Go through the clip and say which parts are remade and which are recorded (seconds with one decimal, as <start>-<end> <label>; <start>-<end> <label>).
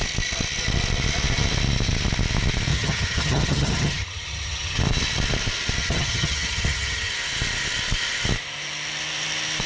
0.0-2.7 recorded; 2.7-4.8 remade; 4.8-5.8 recorded; 5.8-7.1 remade; 7.1-9.7 recorded